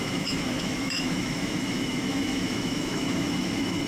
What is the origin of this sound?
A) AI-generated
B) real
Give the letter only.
A